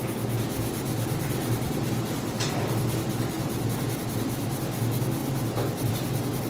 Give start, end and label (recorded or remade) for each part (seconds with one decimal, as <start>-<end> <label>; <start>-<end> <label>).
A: 0.0-0.9 recorded; 0.9-4.8 remade; 4.8-6.5 recorded